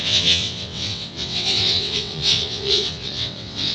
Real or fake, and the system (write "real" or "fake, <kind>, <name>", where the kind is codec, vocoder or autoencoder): fake, vocoder, WaveNeXt